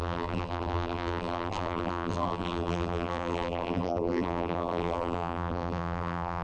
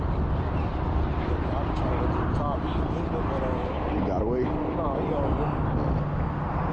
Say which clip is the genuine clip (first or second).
second